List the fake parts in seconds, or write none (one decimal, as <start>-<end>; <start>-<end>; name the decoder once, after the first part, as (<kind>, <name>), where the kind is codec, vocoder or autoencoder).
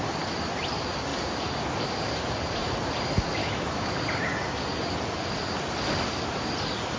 3.4-4.0 (autoencoder, DAC-VAE)